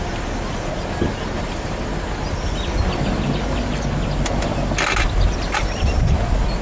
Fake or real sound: real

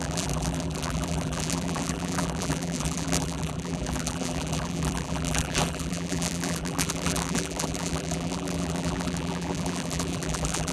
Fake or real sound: fake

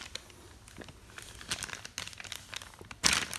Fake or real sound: real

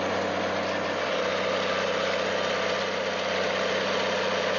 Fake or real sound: real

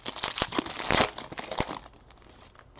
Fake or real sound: real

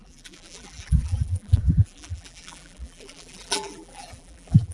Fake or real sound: fake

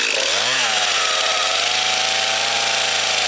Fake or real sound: real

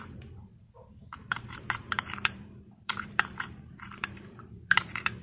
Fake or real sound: fake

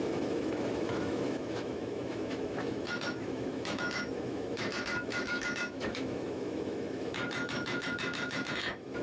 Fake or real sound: fake